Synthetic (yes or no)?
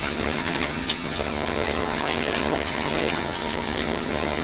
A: yes